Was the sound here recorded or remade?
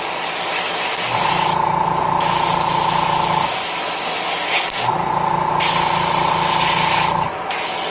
recorded